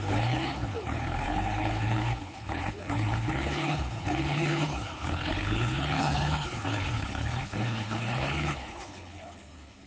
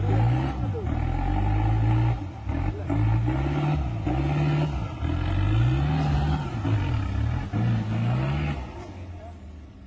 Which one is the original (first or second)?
second